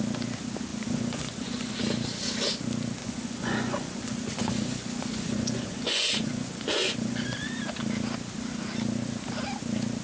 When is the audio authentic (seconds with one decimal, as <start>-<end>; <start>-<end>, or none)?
0.0-0.7; 1.8-3.0; 7.6-10.0